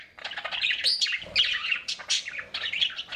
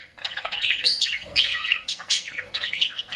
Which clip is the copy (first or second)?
second